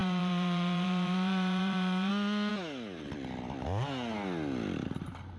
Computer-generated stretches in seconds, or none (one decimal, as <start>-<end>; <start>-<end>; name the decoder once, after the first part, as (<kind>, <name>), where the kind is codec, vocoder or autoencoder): 0.0-2.1 (vocoder, BigVGAN v2)